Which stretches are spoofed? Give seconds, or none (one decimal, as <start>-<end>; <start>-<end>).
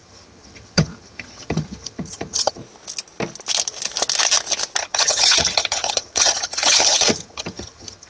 0.0-2.6; 4.8-8.1